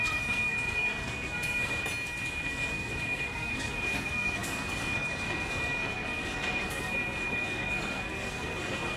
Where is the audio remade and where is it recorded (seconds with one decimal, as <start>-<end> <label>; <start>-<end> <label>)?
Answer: 0.0-1.8 remade; 1.8-2.3 recorded; 2.3-9.0 remade